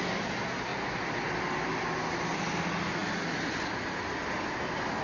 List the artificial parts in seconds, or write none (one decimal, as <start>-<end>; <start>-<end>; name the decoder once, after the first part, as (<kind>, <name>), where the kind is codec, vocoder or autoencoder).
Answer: none